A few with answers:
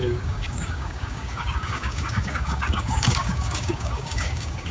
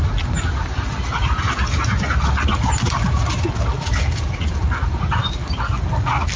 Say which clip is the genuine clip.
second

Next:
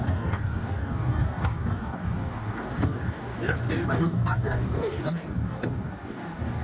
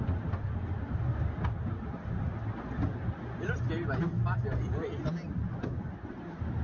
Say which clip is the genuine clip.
second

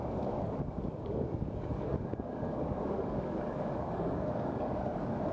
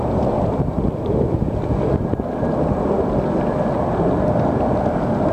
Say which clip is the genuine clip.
second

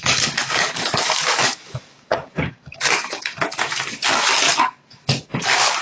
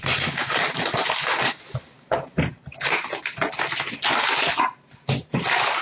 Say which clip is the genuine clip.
second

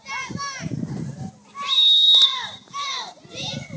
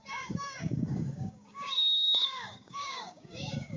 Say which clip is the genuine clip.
first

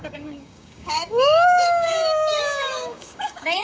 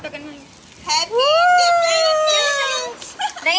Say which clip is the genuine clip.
second